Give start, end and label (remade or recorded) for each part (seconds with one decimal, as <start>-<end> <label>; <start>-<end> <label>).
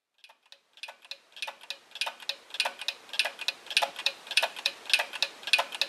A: 0.0-4.0 recorded; 4.0-4.7 remade; 4.7-5.9 recorded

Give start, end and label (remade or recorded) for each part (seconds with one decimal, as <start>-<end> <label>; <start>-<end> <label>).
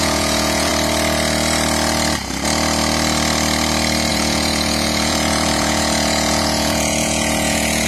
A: 0.0-0.7 remade; 0.7-4.1 recorded; 4.1-7.9 remade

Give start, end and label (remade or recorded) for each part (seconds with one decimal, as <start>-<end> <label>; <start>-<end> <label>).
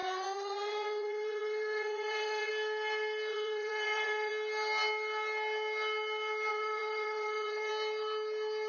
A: 0.0-2.5 remade; 2.5-3.3 recorded; 3.3-4.3 remade; 4.3-6.5 recorded; 6.5-7.7 remade; 7.7-8.7 recorded